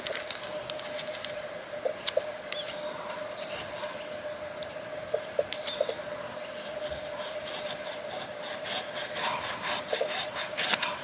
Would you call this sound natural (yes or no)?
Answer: yes